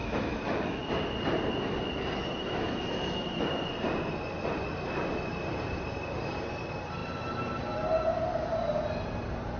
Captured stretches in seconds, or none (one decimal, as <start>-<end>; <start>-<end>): 0.8-2.4; 3.4-9.6